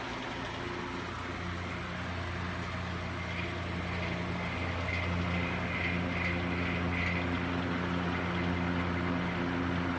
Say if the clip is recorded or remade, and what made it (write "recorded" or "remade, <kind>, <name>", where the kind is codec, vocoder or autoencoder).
recorded